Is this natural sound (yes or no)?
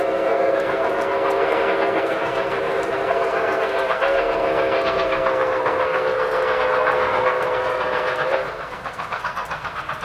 no